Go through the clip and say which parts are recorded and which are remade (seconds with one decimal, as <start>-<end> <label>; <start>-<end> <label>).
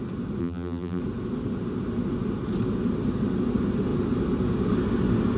0.0-0.4 recorded; 0.4-1.0 remade; 1.0-5.4 recorded